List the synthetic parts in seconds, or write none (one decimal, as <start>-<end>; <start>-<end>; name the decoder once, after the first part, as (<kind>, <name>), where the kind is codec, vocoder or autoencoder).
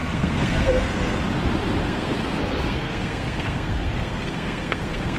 0.0-1.2 (codec, SNAC); 1.8-5.2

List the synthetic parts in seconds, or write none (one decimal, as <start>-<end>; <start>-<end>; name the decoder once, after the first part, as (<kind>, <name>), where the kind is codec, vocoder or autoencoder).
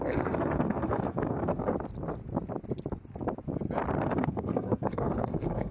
0.0-1.7 (codec, SNAC); 4.0-5.7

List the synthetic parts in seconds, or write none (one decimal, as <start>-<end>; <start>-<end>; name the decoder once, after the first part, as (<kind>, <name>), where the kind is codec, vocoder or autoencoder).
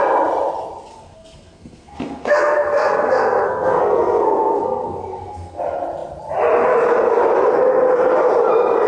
0.9-5.6 (codec, SNAC)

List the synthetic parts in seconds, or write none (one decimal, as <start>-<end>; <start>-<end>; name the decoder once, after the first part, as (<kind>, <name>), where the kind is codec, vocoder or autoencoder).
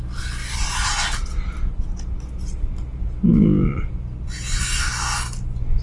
none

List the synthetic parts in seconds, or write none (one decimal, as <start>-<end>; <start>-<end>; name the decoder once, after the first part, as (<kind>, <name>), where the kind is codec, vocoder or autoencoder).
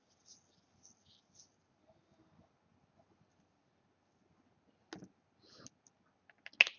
none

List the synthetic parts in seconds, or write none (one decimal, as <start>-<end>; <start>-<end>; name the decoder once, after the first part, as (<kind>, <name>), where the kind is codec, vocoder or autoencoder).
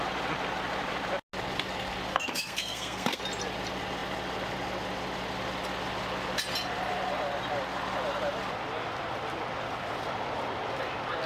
2.1-3.2 (codec, SNAC)